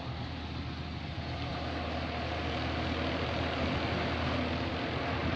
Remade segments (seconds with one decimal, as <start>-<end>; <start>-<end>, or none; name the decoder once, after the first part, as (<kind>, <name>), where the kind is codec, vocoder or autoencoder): none